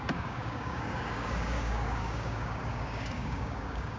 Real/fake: fake